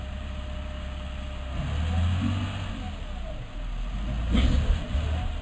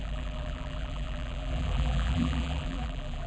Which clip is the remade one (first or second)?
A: second